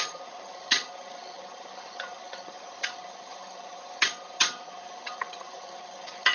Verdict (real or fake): fake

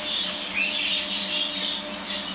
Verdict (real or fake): real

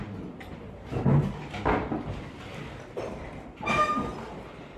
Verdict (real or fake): real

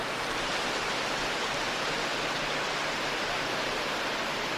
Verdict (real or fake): real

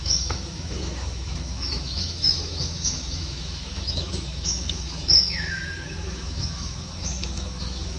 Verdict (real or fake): fake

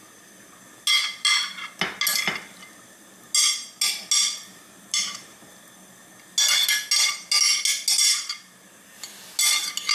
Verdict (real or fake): real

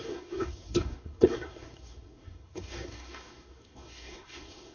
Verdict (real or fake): fake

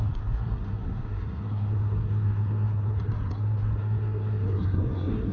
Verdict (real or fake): fake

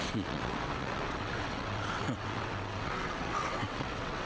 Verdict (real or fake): fake